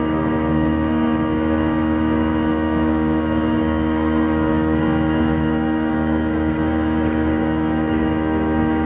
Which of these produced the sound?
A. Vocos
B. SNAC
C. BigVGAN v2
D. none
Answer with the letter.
B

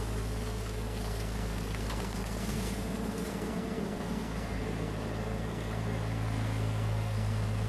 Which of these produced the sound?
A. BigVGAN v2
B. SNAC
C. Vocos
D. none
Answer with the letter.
B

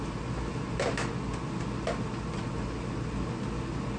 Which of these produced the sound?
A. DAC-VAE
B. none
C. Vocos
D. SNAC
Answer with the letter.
B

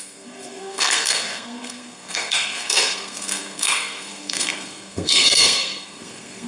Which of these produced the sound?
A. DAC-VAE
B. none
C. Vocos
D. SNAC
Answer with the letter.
D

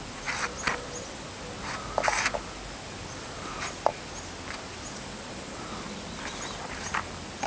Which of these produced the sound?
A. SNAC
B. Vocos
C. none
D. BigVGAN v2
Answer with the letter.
C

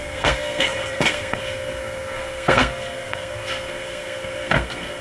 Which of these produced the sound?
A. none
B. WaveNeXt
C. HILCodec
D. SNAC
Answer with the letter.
D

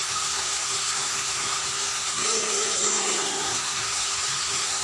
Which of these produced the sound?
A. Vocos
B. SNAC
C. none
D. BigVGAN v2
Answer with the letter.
B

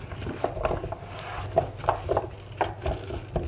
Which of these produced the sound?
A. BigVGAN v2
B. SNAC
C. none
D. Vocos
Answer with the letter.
C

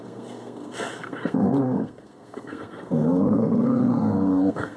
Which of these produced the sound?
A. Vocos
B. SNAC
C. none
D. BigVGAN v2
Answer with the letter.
B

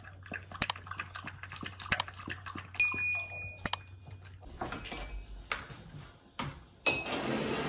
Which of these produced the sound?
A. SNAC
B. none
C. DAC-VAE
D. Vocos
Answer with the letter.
B